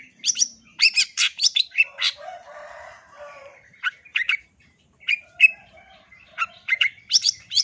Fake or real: fake